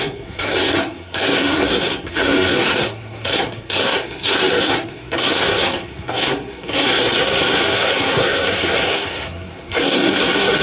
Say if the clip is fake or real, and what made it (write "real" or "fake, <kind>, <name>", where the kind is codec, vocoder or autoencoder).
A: fake, codec, SNAC